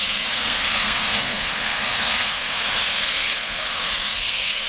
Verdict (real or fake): fake